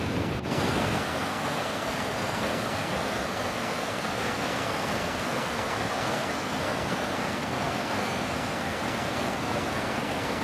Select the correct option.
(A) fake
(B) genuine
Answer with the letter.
A